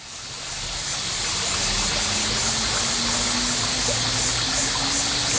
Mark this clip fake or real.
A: real